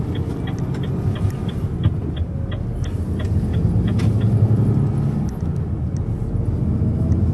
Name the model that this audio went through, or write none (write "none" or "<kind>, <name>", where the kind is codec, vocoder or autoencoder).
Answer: none